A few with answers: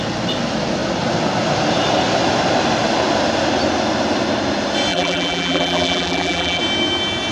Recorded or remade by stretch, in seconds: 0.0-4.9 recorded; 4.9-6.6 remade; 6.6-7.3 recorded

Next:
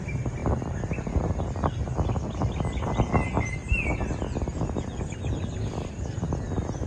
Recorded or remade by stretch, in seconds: 0.0-6.9 recorded

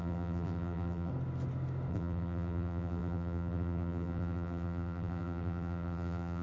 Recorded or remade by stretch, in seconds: 0.0-1.1 remade; 1.1-1.9 recorded; 1.9-6.4 remade

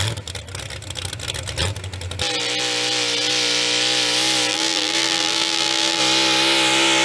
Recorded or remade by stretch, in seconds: 0.0-4.5 recorded; 4.5-6.0 remade; 6.0-7.0 recorded